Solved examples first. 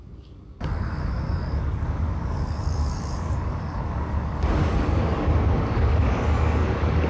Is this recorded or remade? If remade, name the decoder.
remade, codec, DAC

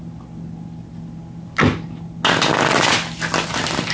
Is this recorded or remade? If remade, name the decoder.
recorded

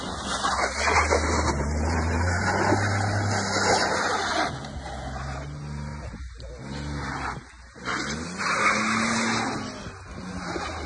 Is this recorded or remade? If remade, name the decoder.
recorded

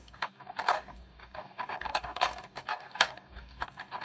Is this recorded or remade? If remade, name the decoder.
remade, codec, DAC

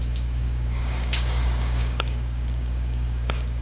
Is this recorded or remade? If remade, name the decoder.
remade, codec, DAC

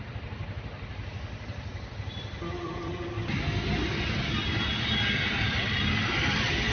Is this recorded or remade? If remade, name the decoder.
recorded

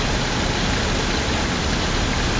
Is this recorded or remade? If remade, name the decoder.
recorded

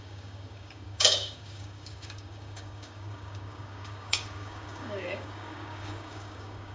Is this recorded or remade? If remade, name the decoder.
remade, codec, DAC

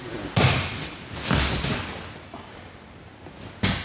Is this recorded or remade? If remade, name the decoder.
recorded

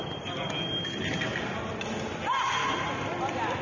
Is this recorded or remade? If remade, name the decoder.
recorded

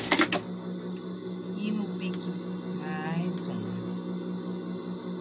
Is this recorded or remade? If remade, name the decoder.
recorded